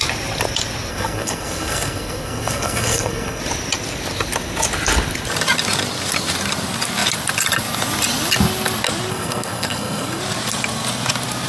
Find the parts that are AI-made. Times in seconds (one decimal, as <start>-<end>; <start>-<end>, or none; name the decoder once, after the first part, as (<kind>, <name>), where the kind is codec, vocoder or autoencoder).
0.9-3.4 (codec, SNAC); 9.1-10.2